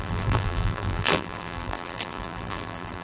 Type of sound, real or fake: fake